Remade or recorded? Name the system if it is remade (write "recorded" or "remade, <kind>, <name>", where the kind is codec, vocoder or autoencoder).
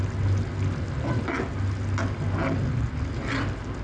recorded